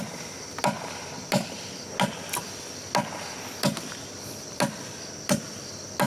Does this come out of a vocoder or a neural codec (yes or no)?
no